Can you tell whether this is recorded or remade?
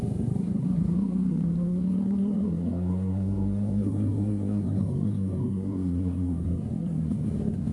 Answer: remade